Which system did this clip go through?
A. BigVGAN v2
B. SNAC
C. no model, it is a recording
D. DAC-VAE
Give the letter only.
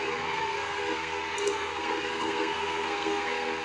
B